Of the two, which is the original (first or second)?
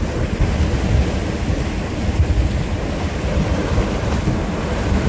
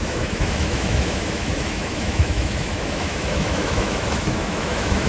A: first